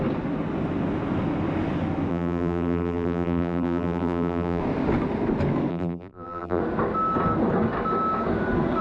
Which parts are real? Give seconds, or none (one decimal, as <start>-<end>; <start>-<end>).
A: 0.0-2.1; 4.6-5.7; 6.6-8.8